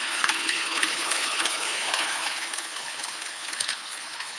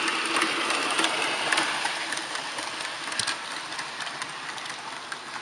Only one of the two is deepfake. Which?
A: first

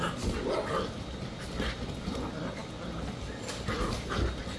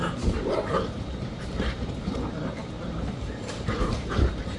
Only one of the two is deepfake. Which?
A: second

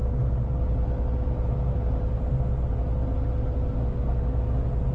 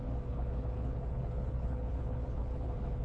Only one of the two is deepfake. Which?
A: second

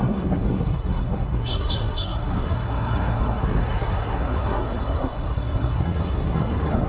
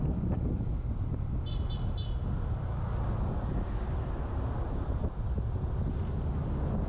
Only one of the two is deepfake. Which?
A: first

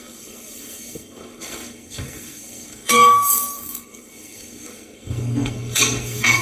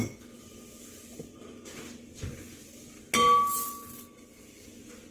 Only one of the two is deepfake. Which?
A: first